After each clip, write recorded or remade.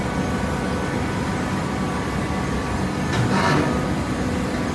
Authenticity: recorded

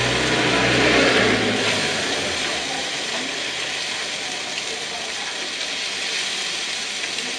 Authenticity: recorded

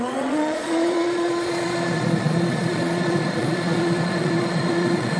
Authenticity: remade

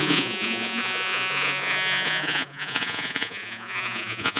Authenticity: remade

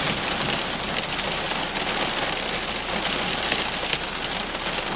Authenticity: recorded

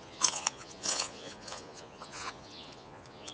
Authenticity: remade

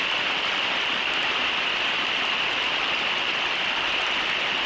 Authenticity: recorded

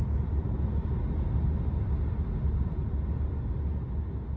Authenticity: recorded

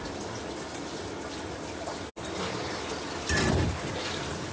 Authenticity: recorded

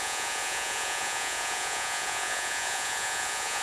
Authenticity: remade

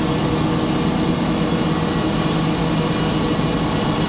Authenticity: recorded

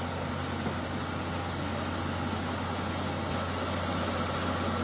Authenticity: recorded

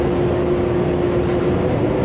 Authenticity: recorded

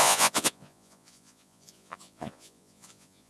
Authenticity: remade